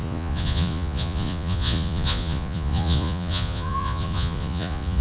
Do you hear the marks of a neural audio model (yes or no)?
yes